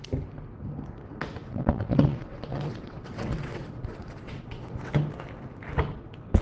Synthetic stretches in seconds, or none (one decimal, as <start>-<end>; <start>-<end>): 1.4-4.9